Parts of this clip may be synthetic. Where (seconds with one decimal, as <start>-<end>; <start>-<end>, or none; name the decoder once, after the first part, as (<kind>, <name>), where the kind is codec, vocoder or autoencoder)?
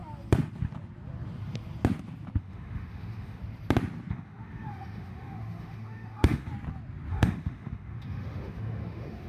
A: 2.4-3.4 (autoencoder, DAC-VAE); 4.1-6.5; 7.1-9.3